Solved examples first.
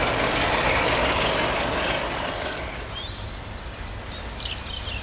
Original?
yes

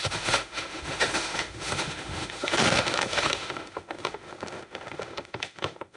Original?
no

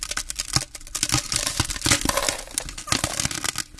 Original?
yes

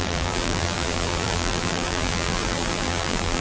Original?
no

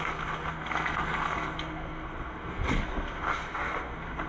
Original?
no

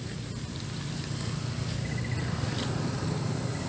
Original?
yes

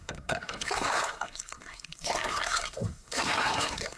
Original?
no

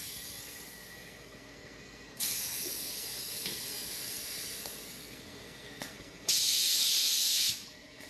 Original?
no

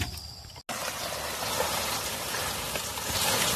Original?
yes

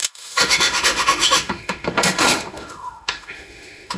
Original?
no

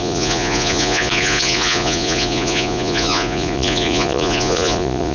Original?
no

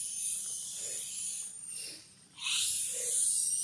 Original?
no